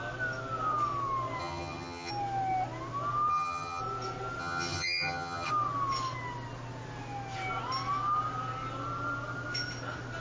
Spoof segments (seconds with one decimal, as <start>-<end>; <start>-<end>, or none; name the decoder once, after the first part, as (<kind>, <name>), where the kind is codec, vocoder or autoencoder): 1.4-2.1 (vocoder, HiFi-GAN); 3.3-3.8; 4.4-5.5